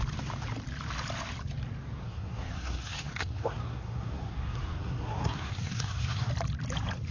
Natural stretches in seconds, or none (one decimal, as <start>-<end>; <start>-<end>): 0.0-2.0; 6.3-7.1